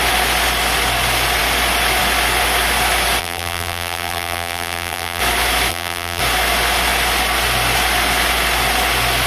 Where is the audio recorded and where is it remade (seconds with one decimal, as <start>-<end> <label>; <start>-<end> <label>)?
0.0-3.2 recorded; 3.2-5.2 remade; 5.2-5.7 recorded; 5.7-6.2 remade; 6.2-9.3 recorded